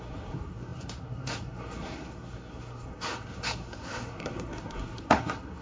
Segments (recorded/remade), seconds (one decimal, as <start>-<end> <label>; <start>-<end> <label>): 0.0-5.6 remade